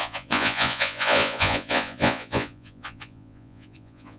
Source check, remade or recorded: remade